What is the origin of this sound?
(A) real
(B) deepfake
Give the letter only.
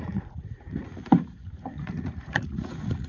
B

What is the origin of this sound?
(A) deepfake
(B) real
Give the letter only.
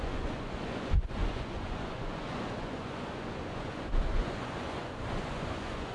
A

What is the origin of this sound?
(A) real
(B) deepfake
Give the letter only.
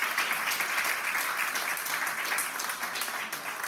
A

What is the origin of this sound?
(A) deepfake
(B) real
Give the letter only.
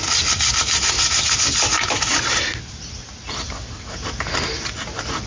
B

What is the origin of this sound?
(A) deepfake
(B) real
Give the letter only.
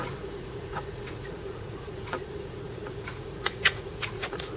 A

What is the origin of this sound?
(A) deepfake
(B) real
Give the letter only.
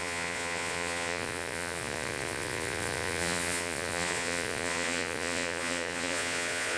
A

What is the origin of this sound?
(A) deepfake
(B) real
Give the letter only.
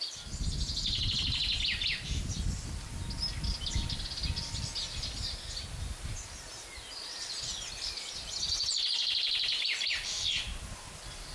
B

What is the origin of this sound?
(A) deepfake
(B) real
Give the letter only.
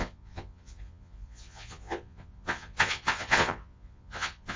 A